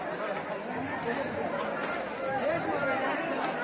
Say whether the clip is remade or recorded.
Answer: recorded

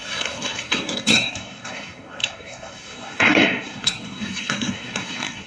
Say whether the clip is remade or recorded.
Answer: remade